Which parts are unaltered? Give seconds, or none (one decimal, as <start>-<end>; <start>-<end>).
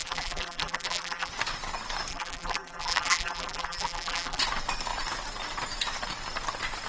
1.3-2.1; 4.4-6.9